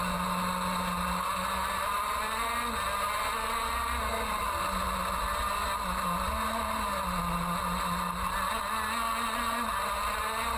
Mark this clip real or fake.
real